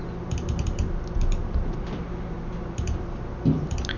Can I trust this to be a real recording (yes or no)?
yes